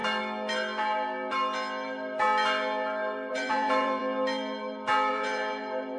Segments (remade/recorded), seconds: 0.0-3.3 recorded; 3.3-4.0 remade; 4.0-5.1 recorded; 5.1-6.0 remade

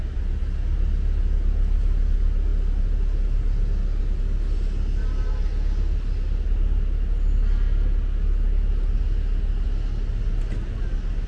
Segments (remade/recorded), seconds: 0.0-11.3 recorded

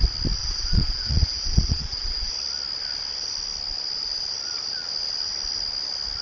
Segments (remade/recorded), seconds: 0.0-0.4 recorded; 0.4-2.3 remade; 2.3-6.2 recorded

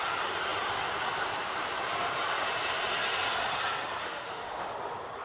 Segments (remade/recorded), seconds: 0.0-4.0 recorded; 4.0-4.7 remade; 4.7-5.2 recorded

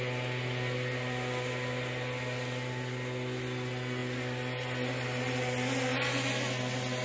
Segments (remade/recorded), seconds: 0.0-7.0 recorded

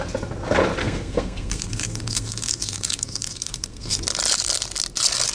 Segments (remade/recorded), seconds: 0.0-0.8 recorded; 0.8-4.0 remade; 4.0-5.3 recorded

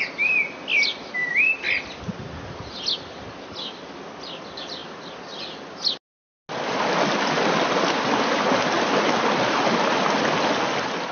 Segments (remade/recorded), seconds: 0.0-11.1 recorded

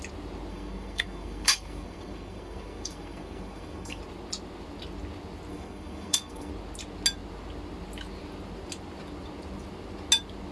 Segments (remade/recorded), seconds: 0.0-0.5 recorded; 0.5-4.0 remade; 4.0-5.5 recorded; 5.5-6.5 remade; 6.5-10.5 recorded